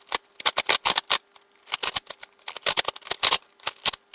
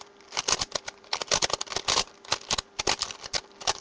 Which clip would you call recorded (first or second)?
first